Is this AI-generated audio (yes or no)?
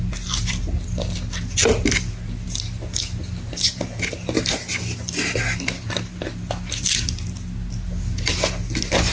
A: no